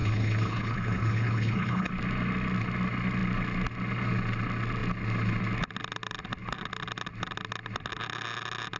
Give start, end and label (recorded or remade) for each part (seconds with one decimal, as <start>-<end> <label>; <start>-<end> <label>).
0.0-1.9 remade; 1.9-8.8 recorded